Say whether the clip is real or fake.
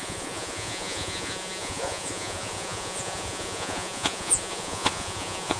fake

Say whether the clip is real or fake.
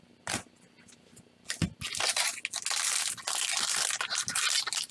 real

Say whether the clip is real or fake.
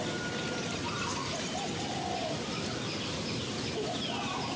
real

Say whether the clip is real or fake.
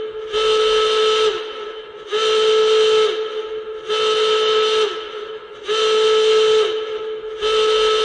real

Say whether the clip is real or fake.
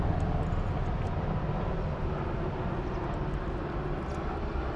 real